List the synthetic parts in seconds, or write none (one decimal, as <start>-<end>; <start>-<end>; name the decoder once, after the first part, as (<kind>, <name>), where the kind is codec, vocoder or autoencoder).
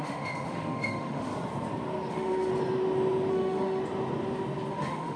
0.0-1.3 (autoencoder, DAC-VAE); 2.1-2.5; 3.3-3.8; 4.7-5.2